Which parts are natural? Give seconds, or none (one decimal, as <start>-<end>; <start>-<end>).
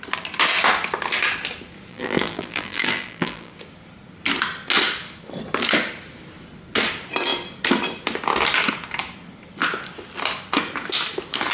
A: 0.0-1.9; 3.5-11.5